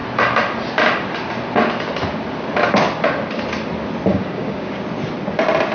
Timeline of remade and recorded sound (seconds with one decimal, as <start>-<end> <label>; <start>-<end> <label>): 0.0-4.1 recorded; 4.1-4.8 remade; 4.8-5.7 recorded